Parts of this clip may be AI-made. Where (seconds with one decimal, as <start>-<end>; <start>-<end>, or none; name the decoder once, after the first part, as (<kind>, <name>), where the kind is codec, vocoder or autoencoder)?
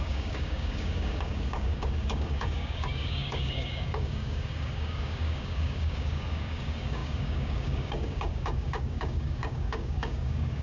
0.0-10.6 (codec, DAC)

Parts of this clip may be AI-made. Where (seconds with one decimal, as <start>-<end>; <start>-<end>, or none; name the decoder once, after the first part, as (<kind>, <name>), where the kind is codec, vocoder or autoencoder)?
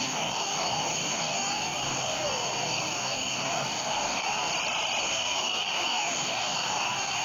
0.0-4.5 (codec, DAC); 5.0-7.2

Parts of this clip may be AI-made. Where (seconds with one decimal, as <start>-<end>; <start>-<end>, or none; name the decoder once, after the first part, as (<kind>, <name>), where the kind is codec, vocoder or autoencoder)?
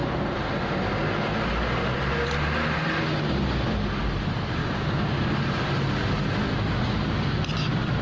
4.6-5.3 (codec, DAC)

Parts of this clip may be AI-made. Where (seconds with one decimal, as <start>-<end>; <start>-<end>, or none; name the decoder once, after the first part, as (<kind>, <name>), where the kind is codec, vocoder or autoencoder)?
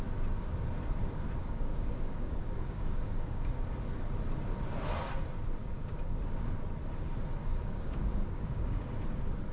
1.4-3.5 (codec, DAC); 5.6-6.2; 7.4-8.8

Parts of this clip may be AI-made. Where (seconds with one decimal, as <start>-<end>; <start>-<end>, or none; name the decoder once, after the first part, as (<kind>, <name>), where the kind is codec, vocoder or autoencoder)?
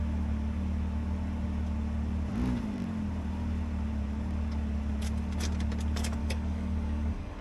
6.2-7.4 (codec, DAC)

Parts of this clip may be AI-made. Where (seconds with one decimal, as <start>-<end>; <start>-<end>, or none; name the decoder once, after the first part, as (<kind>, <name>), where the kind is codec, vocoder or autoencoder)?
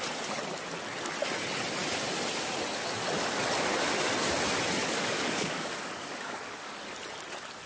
4.8-6.8 (codec, DAC)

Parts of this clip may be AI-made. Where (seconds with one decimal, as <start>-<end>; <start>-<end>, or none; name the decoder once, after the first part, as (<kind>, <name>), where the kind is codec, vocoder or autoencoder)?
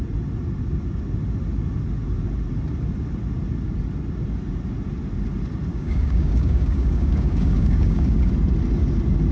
5.7-8.3 (codec, DAC)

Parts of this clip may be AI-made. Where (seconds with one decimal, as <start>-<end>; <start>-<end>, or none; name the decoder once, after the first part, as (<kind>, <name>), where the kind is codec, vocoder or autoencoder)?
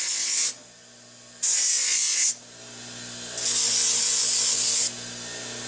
none